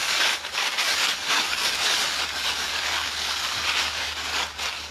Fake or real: fake